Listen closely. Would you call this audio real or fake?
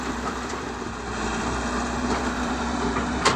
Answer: fake